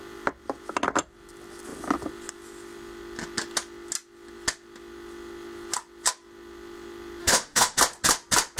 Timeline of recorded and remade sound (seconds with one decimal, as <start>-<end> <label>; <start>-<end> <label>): 0.0-7.2 recorded; 7.2-7.8 remade; 7.8-8.6 recorded

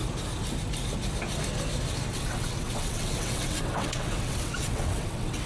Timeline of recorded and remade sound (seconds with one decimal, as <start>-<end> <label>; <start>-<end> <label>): 0.0-2.1 recorded; 2.1-5.5 remade

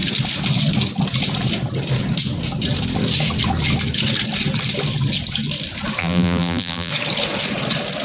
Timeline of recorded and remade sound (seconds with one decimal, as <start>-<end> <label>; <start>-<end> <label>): 0.0-6.0 recorded; 6.0-6.9 remade; 6.9-8.0 recorded